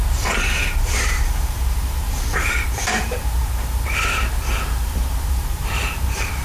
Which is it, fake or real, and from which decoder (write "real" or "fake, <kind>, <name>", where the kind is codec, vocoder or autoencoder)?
fake, vocoder, BigVGAN v2